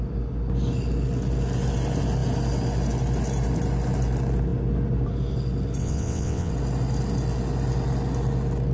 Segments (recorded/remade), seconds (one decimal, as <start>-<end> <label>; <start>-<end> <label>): 0.0-5.8 recorded; 5.8-6.5 remade; 6.5-8.7 recorded